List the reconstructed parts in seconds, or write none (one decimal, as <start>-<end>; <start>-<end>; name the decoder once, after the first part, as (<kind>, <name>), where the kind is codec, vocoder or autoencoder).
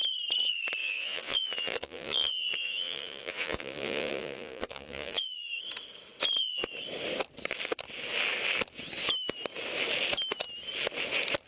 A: 0.8-5.6 (vocoder, Vocos)